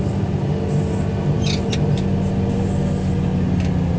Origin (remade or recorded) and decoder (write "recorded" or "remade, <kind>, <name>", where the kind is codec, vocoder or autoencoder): recorded